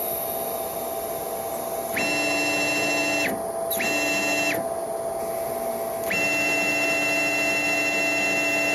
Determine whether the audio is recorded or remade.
recorded